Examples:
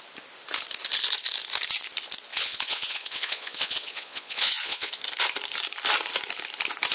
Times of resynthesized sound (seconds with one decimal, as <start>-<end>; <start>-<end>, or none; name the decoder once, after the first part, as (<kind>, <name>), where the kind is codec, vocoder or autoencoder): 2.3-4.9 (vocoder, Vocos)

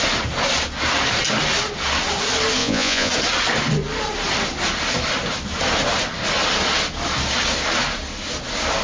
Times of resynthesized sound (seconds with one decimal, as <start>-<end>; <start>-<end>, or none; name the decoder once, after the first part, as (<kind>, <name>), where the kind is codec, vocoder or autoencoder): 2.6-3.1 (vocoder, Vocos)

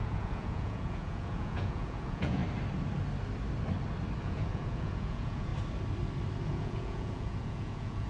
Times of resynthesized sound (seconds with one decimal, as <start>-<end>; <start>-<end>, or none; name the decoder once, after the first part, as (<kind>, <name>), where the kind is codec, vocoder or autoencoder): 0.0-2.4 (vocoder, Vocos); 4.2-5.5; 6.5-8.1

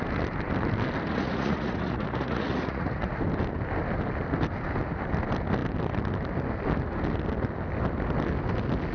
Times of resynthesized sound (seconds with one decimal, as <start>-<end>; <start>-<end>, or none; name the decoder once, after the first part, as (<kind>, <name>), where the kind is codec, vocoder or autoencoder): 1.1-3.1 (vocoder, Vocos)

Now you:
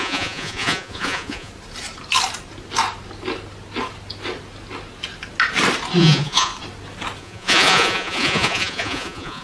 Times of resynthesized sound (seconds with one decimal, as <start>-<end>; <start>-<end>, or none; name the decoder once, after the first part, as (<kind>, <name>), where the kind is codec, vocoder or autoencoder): 0.0-1.5 (vocoder, Vocos); 6.0-6.5; 7.2-9.4

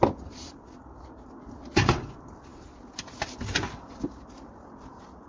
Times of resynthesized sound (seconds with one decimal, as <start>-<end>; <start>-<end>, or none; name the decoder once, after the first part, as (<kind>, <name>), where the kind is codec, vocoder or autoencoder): none